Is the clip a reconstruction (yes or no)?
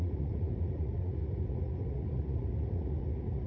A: yes